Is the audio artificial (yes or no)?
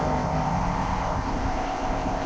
yes